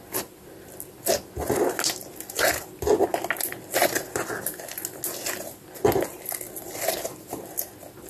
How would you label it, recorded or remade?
recorded